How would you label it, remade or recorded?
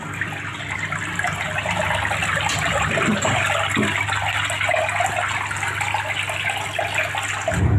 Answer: recorded